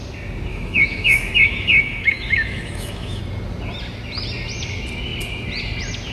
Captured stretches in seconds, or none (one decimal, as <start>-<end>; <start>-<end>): 0.0-0.5; 3.2-6.1